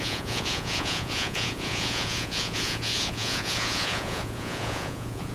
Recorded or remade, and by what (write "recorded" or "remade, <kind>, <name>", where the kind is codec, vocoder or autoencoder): remade, vocoder, Vocos